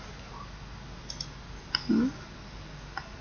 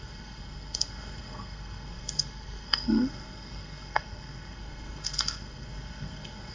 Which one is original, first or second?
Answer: first